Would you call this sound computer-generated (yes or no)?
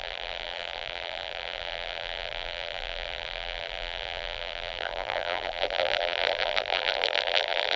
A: yes